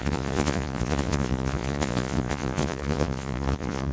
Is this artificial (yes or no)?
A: yes